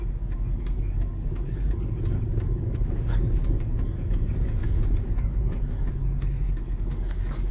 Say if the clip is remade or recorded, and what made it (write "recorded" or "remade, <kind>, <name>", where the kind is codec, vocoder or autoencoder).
remade, codec, DAC